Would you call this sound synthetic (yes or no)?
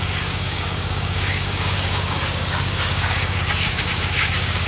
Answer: yes